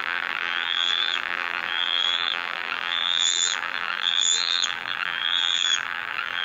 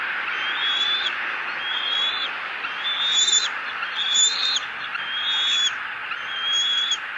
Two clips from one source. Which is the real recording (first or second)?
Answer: second